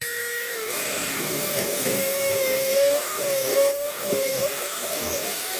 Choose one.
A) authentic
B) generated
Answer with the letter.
B